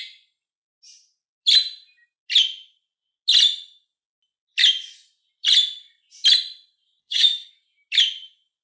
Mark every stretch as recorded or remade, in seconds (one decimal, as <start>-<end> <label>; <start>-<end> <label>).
0.0-7.0 recorded; 7.0-7.5 remade; 7.5-8.6 recorded